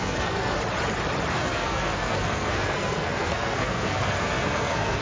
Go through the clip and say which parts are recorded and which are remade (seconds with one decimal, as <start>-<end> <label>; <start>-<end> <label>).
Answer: 0.0-0.6 remade; 0.6-1.3 recorded; 1.3-5.0 remade